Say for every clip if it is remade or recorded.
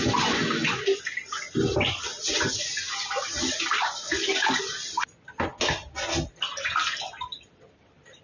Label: recorded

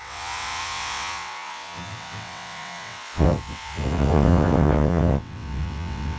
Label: remade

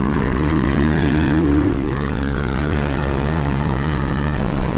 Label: remade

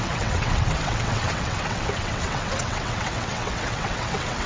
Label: remade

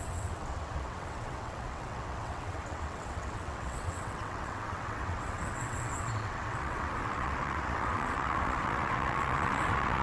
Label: remade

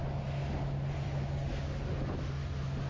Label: recorded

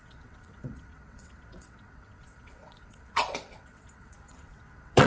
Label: remade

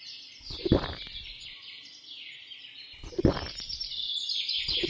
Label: recorded